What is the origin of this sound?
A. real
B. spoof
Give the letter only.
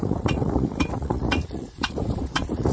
B